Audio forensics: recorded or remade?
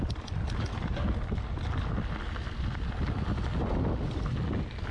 recorded